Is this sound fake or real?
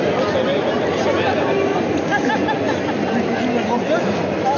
real